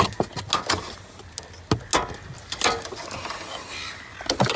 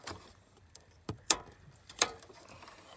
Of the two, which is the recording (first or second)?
first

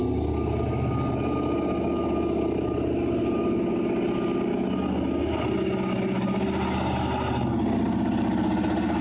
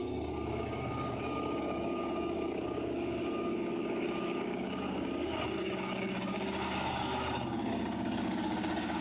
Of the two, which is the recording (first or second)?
first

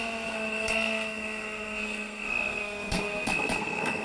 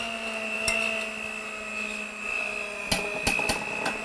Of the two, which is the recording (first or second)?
second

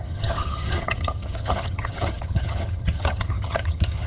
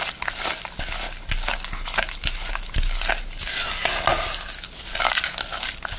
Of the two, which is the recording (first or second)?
second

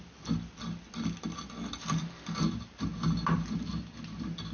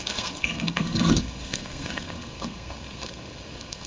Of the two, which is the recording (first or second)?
first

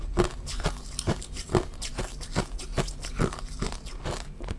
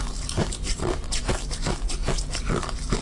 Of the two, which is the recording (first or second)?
first